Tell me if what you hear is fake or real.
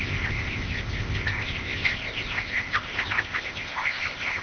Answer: fake